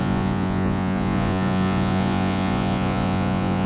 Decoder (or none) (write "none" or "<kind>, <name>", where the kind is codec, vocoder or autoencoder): vocoder, Vocos